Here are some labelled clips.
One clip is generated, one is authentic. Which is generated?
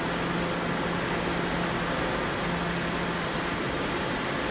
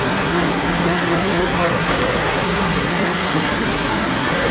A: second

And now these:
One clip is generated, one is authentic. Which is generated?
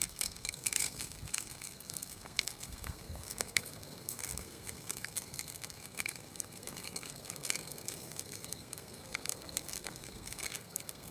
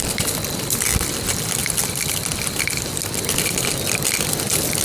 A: first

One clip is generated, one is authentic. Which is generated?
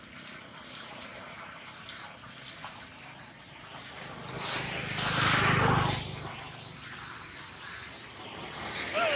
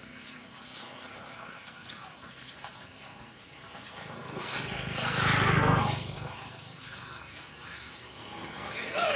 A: second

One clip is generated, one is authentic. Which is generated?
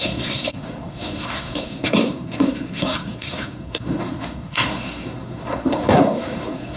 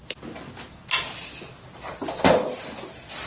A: first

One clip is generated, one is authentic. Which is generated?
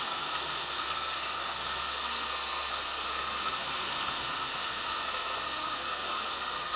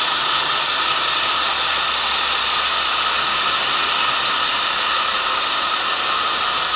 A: first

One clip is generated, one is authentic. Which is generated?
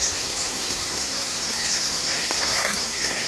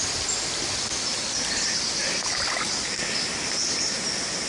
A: first